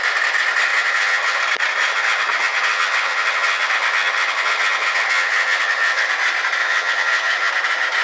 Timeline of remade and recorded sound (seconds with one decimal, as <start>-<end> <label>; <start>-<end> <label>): 0.0-0.7 recorded; 0.7-1.4 remade; 1.4-1.9 recorded; 1.9-6.1 remade; 6.1-6.6 recorded; 6.6-7.5 remade; 7.5-8.0 recorded